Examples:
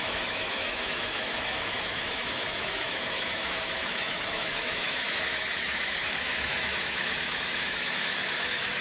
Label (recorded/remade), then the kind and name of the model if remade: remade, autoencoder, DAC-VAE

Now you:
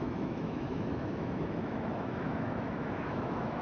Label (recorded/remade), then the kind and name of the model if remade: remade, autoencoder, DAC-VAE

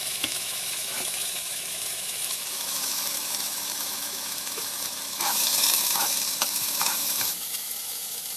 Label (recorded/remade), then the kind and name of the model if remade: remade, autoencoder, DAC-VAE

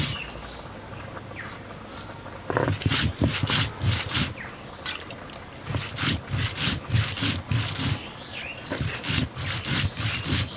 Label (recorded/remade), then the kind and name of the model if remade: recorded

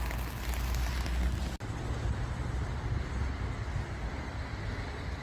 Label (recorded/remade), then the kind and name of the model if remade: recorded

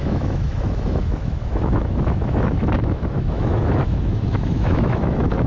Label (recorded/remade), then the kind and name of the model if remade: remade, autoencoder, DAC-VAE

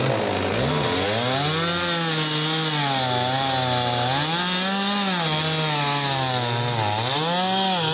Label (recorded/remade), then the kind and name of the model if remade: recorded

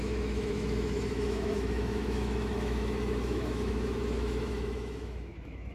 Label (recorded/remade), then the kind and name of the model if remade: remade, autoencoder, DAC-VAE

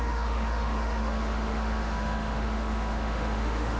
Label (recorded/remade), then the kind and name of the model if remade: remade, autoencoder, DAC-VAE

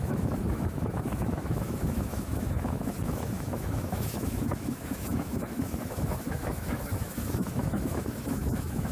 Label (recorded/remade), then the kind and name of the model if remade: remade, autoencoder, DAC-VAE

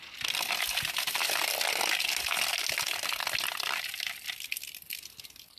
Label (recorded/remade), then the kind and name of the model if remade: recorded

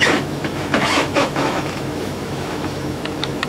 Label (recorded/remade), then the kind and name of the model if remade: remade, autoencoder, DAC-VAE